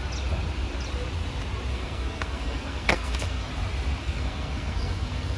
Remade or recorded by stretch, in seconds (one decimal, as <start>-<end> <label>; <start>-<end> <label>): 0.0-1.7 recorded; 1.7-3.5 remade; 3.5-4.0 recorded; 4.0-5.4 remade